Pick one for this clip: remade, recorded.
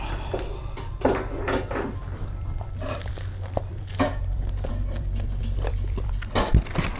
remade